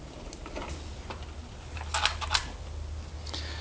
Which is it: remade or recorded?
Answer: recorded